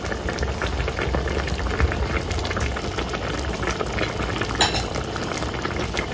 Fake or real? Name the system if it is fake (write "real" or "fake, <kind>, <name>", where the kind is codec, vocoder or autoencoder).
real